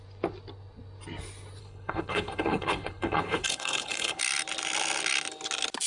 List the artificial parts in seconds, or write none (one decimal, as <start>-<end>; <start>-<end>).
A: 1.6-4.2